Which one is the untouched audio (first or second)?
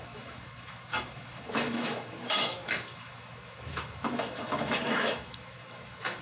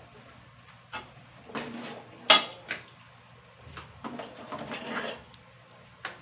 second